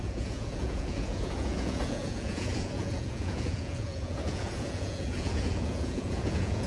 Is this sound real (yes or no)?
no